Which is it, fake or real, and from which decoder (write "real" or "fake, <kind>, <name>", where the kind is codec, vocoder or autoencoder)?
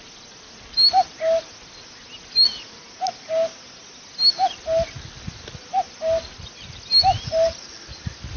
real